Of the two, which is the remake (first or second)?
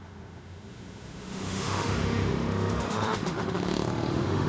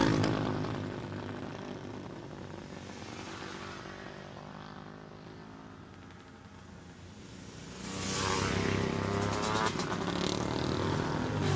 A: first